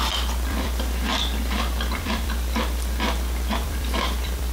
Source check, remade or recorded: remade